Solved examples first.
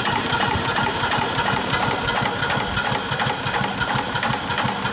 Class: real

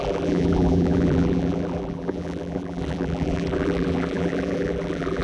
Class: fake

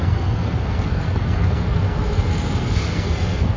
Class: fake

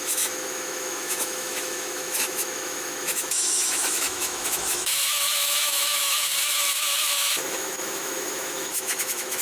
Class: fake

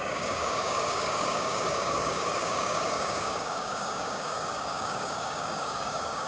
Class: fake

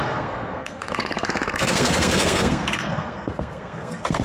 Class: fake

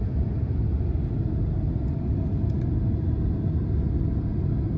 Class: real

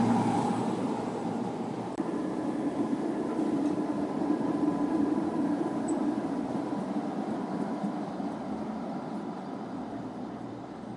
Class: fake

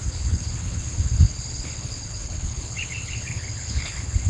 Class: fake